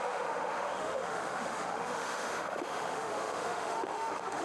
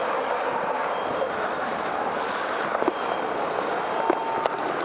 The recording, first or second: second